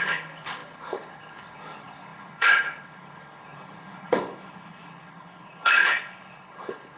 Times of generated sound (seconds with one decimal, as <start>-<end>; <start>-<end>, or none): 0.0-7.0